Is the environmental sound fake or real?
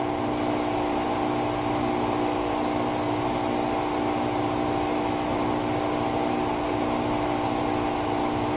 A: real